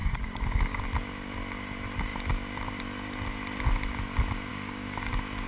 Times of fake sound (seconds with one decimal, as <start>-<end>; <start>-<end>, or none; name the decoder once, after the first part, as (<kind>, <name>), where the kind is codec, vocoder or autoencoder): 0.0-0.8 (codec, DAC); 4.5-5.1